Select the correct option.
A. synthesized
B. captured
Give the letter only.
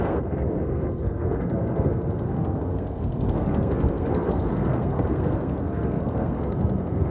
A